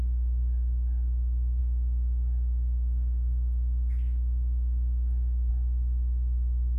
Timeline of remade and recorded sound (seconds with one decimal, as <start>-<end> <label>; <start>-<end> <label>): 0.0-6.8 recorded